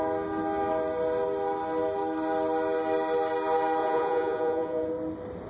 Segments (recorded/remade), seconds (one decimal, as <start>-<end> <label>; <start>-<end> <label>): 0.0-3.8 recorded; 3.8-4.9 remade; 4.9-5.5 recorded